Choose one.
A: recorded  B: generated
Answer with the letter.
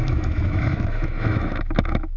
B